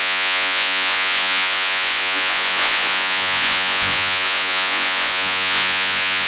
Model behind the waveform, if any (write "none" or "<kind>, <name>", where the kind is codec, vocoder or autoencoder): vocoder, Vocos